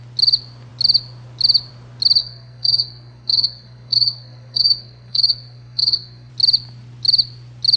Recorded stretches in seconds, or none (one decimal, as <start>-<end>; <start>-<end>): 0.0-2.2; 6.3-7.8